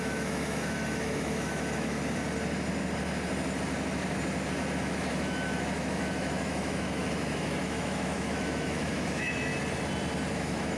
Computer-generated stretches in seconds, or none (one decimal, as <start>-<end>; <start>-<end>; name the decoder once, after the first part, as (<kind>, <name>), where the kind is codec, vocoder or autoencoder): 0.0-2.0 (autoencoder, DAC-VAE); 4.8-9.5; 10.3-10.8